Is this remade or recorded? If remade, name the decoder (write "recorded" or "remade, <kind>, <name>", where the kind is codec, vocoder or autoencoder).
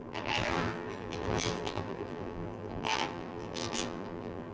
remade, vocoder, BigVGAN v2